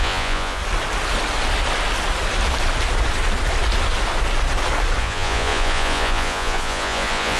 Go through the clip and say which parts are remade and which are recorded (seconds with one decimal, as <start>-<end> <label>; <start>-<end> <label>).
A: 0.0-0.6 remade; 0.6-5.0 recorded; 5.0-7.4 remade